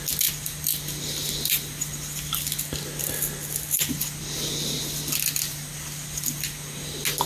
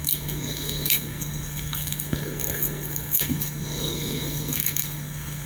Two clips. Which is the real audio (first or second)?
first